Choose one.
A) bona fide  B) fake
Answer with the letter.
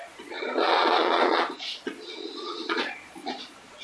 B